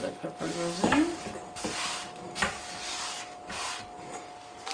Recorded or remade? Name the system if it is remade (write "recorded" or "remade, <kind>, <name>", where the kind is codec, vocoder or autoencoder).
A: recorded